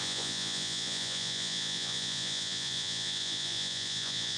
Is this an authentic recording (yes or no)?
no